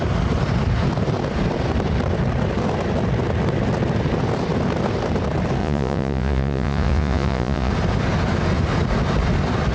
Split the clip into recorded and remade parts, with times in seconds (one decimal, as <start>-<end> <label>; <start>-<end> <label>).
0.0-5.6 recorded; 5.6-7.7 remade; 7.7-9.7 recorded